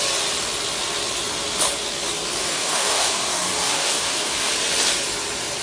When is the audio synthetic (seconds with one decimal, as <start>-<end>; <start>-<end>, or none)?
2.4-4.5